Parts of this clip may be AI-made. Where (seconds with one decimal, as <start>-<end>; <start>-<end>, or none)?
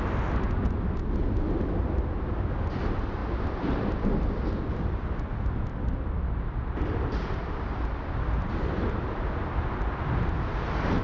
3.2-5.1; 5.7-10.0